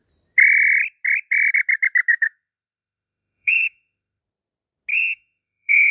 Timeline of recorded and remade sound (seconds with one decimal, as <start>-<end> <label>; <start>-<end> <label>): 0.0-2.1 recorded; 2.1-4.2 remade; 4.2-4.9 recorded; 4.9-5.9 remade